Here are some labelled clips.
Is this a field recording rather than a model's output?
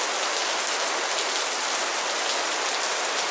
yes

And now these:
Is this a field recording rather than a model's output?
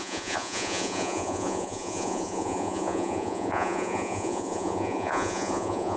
no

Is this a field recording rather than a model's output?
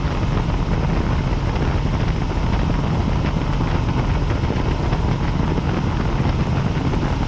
yes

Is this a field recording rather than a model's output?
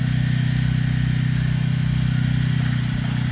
yes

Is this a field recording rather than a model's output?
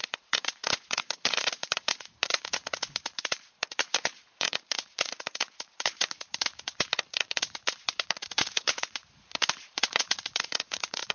no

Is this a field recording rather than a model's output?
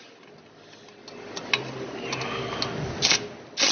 yes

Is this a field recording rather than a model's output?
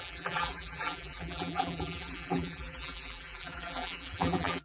no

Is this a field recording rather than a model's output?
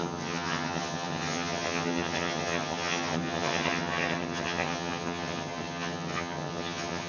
no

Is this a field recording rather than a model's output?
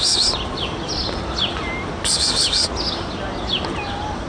yes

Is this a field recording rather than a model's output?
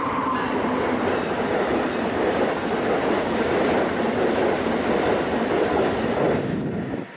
yes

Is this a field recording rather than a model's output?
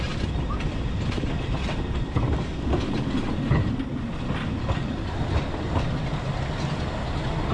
yes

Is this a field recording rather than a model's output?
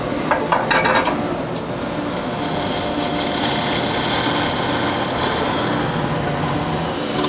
yes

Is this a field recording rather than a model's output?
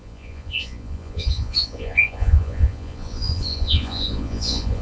no